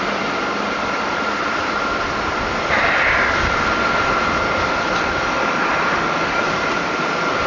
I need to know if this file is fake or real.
fake